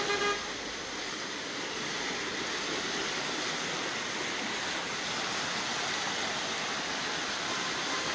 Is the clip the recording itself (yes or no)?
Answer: yes